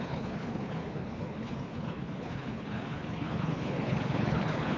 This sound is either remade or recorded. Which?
remade